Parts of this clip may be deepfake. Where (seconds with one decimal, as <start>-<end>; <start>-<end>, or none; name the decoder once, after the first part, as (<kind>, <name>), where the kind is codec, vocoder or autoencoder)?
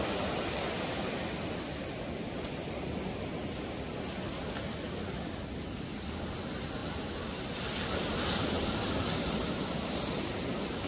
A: none